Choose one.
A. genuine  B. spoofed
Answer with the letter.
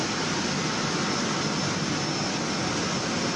A